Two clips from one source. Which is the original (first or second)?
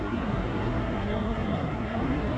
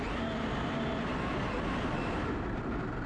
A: second